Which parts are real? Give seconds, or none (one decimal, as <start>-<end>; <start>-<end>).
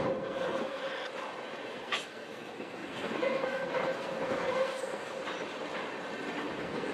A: 0.8-1.7; 5.2-6.5